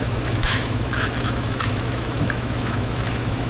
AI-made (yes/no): yes